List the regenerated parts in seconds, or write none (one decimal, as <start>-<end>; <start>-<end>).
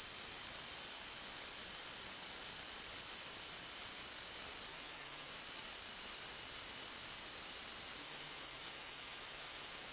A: 4.7-5.3; 8.0-9.9